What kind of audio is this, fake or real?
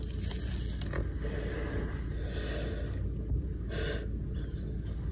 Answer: real